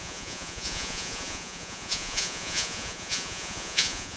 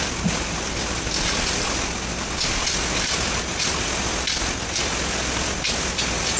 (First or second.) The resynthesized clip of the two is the first